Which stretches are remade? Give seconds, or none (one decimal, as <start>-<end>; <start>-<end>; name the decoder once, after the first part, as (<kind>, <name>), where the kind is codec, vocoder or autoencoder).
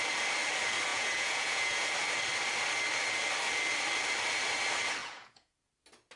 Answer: 0.9-1.9 (vocoder, Vocos); 5.0-5.7